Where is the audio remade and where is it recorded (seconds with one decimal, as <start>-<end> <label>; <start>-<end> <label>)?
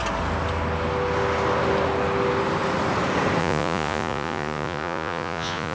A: 0.0-3.4 recorded; 3.4-5.7 remade